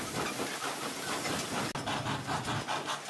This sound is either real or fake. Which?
real